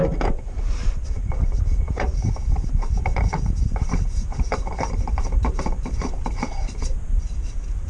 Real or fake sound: fake